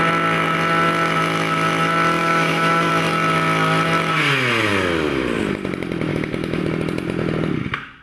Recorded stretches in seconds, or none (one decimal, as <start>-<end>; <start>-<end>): 0.0-2.2; 2.9-6.1; 6.6-8.0

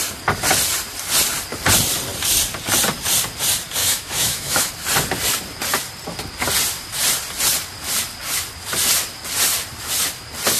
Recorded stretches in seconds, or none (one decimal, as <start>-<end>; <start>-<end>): 0.0-3.8; 4.7-10.6

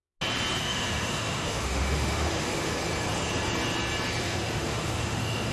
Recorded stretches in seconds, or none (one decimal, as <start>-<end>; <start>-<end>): 0.0-0.6; 2.8-4.2

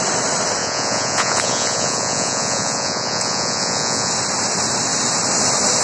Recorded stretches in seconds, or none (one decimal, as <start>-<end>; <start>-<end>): 0.0-0.6; 4.1-5.8

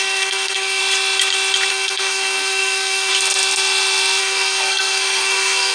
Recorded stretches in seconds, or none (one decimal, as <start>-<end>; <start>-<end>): 0.8-1.7; 3.1-4.2

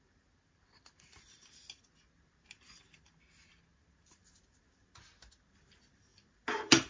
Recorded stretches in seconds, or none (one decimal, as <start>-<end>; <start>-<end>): 0.0-6.9

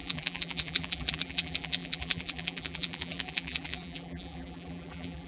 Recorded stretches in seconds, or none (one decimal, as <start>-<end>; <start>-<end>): none

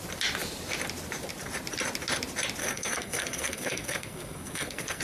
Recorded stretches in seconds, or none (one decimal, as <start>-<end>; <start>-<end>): 0.0-2.6